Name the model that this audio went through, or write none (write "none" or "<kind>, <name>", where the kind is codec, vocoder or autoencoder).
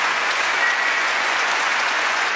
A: vocoder, Vocos